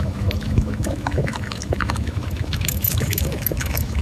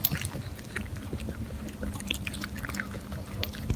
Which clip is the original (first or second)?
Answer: second